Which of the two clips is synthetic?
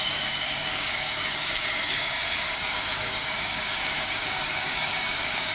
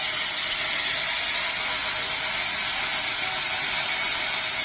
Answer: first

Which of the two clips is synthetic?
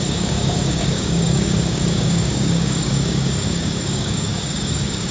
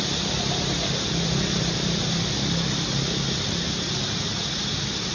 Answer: first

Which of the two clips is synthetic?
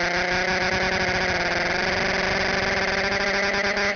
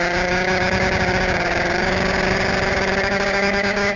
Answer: second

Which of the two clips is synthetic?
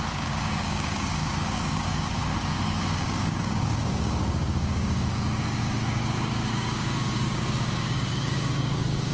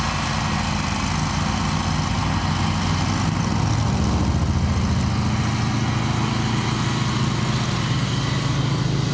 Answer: first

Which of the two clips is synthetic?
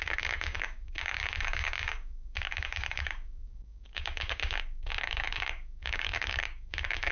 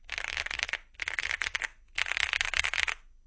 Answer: first